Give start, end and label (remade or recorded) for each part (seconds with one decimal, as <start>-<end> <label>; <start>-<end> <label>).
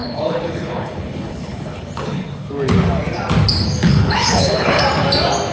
0.0-2.5 remade; 2.5-3.9 recorded; 3.9-4.8 remade; 4.8-5.5 recorded